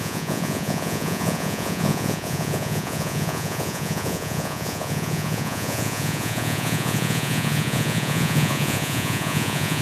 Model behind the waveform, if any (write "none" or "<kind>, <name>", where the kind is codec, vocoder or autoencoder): vocoder, Vocos